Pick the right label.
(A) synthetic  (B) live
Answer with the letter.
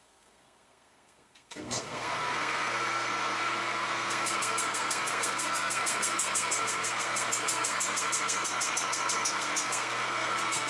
A